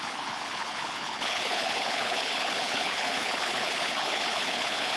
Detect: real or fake fake